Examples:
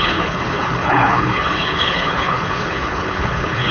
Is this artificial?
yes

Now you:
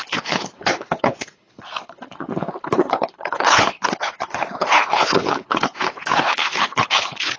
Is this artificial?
yes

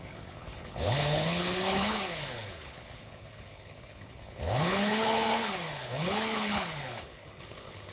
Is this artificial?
yes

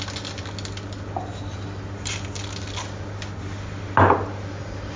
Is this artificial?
no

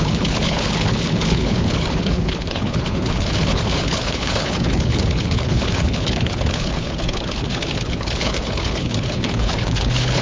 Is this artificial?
yes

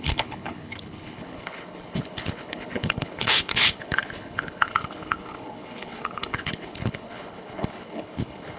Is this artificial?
yes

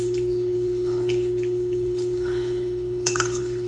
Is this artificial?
yes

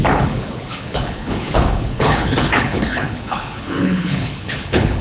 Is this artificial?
yes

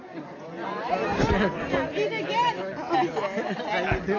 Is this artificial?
no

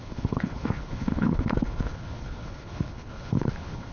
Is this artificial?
yes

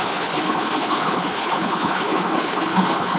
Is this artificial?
yes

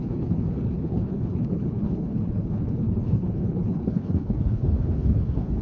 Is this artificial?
yes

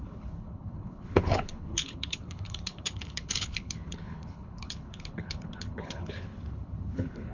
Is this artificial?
yes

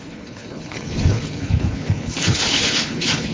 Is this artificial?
yes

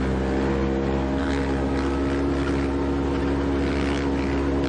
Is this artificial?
no